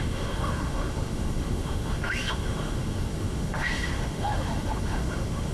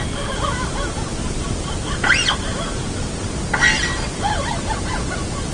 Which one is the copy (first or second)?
first